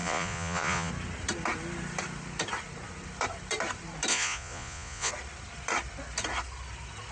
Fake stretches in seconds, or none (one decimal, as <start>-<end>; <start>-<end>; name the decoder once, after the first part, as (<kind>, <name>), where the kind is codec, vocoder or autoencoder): 0.0-0.9 (vocoder, Vocos); 4.1-5.1